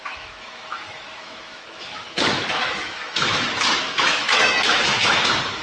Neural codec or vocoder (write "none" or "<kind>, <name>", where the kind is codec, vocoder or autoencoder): autoencoder, DAC-VAE